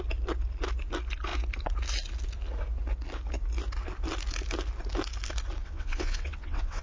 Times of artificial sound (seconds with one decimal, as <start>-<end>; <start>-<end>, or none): 5.6-6.8